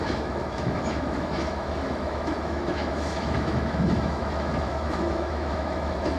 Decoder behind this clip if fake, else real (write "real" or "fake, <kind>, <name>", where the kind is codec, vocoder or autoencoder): fake, autoencoder, DAC-VAE